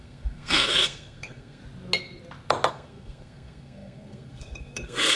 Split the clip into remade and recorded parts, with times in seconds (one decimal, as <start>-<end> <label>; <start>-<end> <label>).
0.0-1.6 remade; 1.6-2.7 recorded; 2.7-5.2 remade